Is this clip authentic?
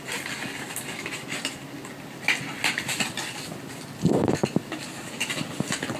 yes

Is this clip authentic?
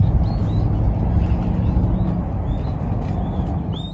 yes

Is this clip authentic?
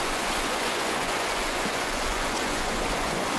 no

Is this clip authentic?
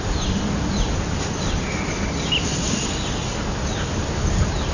yes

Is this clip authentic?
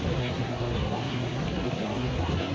no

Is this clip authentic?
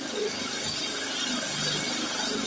yes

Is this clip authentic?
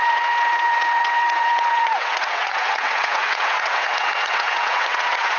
no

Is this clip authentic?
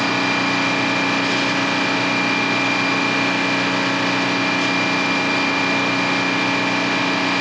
yes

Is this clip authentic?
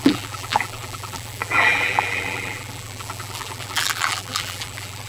no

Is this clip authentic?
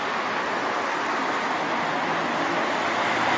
yes